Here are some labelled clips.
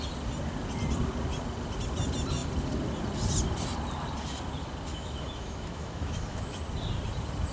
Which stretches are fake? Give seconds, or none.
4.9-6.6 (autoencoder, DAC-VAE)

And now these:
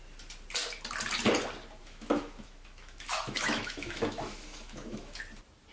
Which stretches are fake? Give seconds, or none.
1.8-5.2 (autoencoder, DAC-VAE)